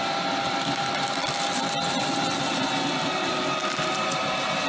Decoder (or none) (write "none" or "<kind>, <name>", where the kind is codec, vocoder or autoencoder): none